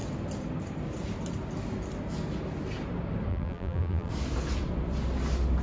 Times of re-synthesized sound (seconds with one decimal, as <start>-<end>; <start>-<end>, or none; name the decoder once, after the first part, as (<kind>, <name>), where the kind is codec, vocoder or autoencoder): 3.3-4.1 (vocoder, BigVGAN v2)